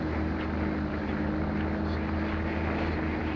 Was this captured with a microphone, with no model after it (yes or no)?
yes